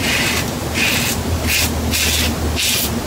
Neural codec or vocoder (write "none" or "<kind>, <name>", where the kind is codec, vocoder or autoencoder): none